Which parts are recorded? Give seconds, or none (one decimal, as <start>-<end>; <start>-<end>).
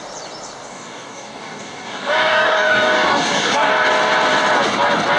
0.0-0.7; 3.7-5.2